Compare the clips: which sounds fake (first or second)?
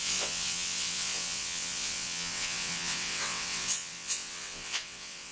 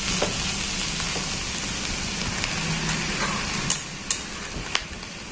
first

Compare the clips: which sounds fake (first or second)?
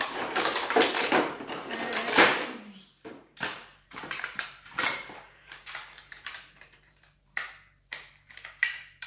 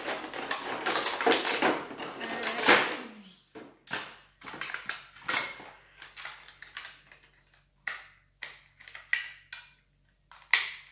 first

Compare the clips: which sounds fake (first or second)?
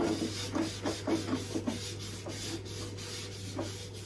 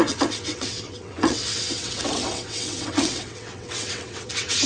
second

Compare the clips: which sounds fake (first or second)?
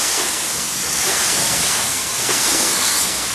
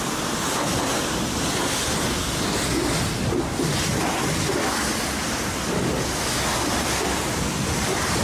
first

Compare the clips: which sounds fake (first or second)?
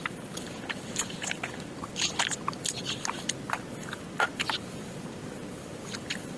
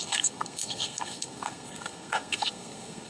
second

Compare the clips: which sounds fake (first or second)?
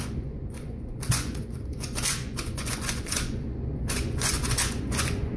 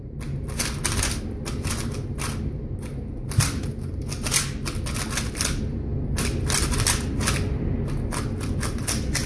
first